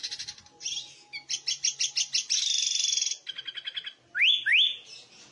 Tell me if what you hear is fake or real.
real